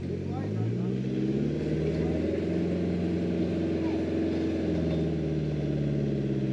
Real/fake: real